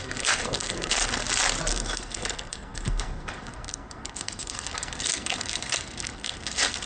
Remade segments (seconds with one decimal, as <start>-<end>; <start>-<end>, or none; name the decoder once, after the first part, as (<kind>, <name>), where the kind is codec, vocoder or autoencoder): 0.0-1.2 (codec, SNAC); 1.7-6.9